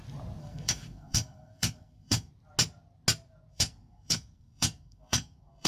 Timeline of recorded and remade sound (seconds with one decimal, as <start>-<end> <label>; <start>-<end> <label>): 0.0-0.4 recorded; 0.4-2.3 remade; 2.3-3.5 recorded; 3.5-5.7 remade